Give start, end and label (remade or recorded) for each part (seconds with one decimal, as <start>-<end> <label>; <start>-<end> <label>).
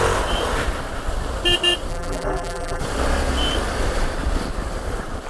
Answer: 0.0-1.9 recorded; 1.9-2.8 remade; 2.8-5.3 recorded